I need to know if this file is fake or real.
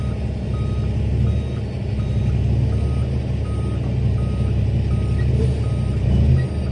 real